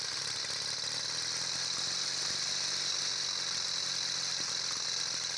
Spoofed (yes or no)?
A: no